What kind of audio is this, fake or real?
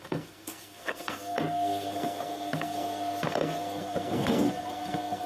fake